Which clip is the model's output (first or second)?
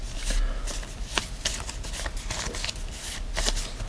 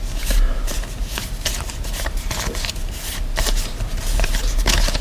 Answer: second